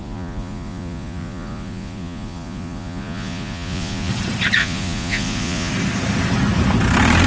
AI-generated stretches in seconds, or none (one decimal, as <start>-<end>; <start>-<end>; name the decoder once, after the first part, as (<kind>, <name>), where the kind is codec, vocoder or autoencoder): 0.0-4.1 (vocoder, Vocos); 4.6-5.7